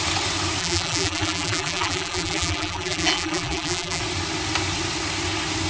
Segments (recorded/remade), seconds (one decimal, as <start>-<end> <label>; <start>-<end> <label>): 0.0-0.6 recorded; 0.6-4.0 remade; 4.0-5.7 recorded